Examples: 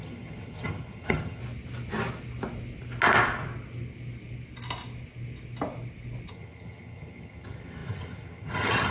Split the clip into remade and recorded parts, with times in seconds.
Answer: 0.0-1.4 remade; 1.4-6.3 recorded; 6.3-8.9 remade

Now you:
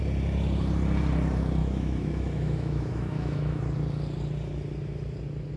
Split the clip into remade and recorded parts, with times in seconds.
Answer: 0.0-1.6 recorded; 1.6-3.6 remade; 3.6-5.6 recorded

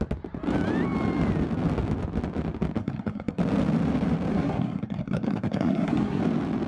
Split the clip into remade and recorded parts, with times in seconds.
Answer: 0.0-2.8 recorded; 2.8-3.4 remade; 3.4-4.3 recorded; 4.3-6.2 remade; 6.2-6.7 recorded

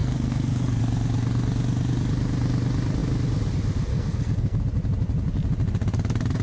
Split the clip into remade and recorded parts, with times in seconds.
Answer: 0.0-0.8 remade; 0.8-3.9 recorded; 3.9-4.6 remade; 4.6-6.4 recorded

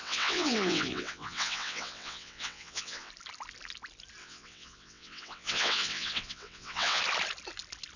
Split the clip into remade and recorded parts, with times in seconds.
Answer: 0.0-3.1 remade; 3.1-4.2 recorded; 4.2-7.0 remade; 7.0-8.0 recorded

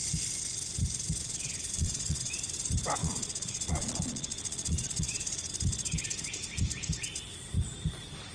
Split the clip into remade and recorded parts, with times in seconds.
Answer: 0.0-1.2 recorded; 1.2-2.3 remade; 2.3-3.0 recorded; 3.0-5.5 remade; 5.5-8.3 recorded

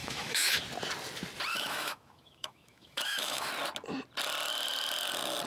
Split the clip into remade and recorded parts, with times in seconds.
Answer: 0.0-0.6 remade; 0.6-1.5 recorded; 1.5-3.5 remade; 3.5-5.5 recorded

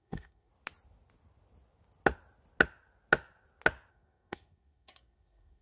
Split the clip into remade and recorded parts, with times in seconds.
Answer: 0.0-0.5 remade; 0.5-3.9 recorded; 3.9-5.6 remade